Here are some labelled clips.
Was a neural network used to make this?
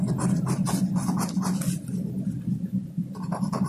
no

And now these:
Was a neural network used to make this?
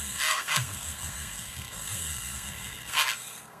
yes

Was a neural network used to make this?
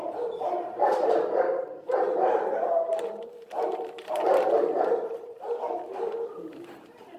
yes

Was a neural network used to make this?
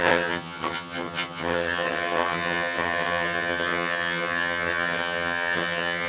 yes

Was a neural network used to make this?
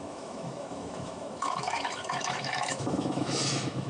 yes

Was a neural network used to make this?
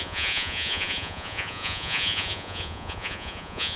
yes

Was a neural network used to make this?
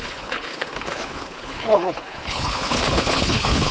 yes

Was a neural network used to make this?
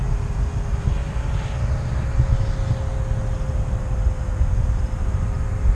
no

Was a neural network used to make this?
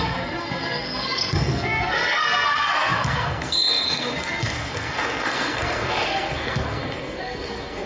yes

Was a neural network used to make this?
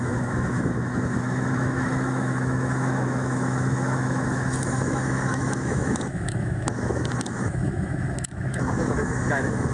yes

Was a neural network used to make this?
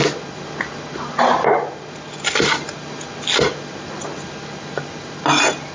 no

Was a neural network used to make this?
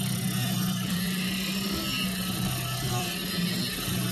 yes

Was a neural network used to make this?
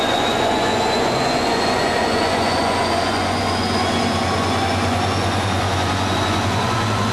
yes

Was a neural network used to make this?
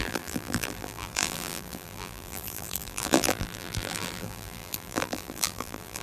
yes